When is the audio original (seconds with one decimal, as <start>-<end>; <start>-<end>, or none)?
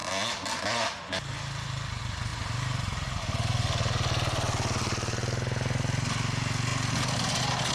0.0-7.7